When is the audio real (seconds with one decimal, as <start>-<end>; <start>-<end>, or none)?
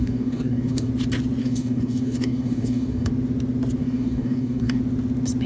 0.9-1.4; 3.1-3.8; 4.8-5.5